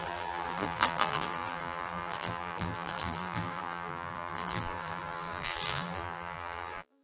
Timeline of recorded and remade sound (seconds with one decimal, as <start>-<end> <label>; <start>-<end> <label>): 0.0-7.0 remade